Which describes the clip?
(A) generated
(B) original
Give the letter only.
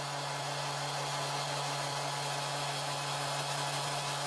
B